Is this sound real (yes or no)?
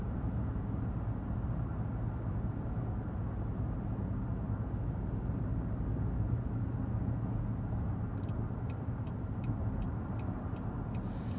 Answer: yes